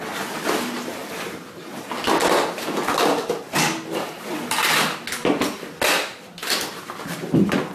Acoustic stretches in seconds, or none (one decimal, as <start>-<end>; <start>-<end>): 0.0-7.7